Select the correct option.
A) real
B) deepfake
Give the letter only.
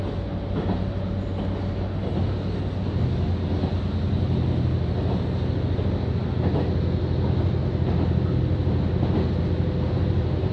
A